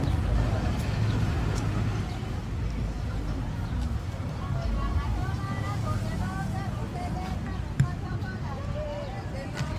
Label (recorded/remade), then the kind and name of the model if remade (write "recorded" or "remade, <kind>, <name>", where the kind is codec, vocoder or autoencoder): recorded